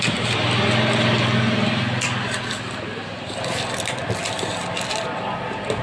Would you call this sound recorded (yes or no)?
yes